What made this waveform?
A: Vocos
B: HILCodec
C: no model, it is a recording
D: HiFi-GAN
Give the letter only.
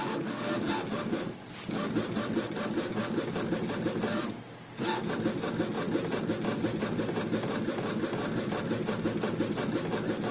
C